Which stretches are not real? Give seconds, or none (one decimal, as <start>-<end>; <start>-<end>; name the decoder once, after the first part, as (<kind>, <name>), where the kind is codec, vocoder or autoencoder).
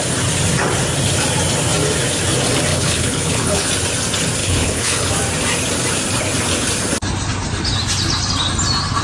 2.7-3.7 (codec, HILCodec); 4.4-5.1